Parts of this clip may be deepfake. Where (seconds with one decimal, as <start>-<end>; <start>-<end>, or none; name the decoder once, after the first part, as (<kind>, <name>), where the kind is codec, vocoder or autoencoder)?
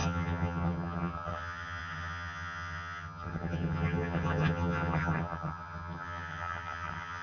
0.0-7.2 (vocoder, HiFi-GAN)